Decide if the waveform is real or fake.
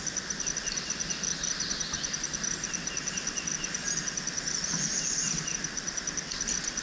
real